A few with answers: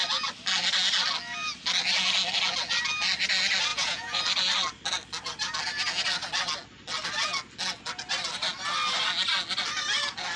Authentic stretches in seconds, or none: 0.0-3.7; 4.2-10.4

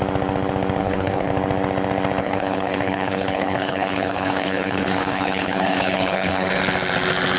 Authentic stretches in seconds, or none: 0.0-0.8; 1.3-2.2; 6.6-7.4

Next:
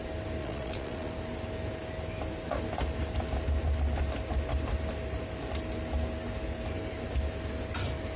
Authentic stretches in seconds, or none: 0.0-0.4; 1.1-8.2

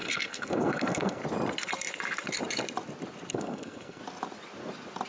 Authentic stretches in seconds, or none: 1.2-3.3; 4.0-5.1

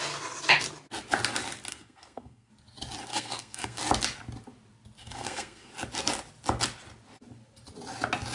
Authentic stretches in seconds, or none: 0.0-1.7; 2.5-3.1; 3.8-5.0; 5.7-8.3

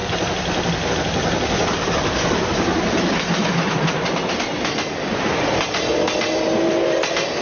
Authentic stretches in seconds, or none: 0.0-7.4

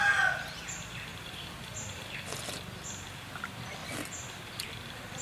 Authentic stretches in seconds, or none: 0.0-1.1; 2.3-3.8

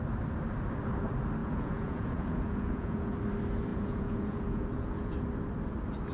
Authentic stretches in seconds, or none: 0.0-1.4; 3.2-3.7; 5.2-6.1